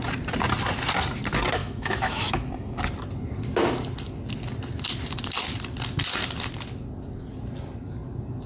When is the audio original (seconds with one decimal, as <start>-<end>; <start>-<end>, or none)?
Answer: 0.0-1.6; 2.5-8.5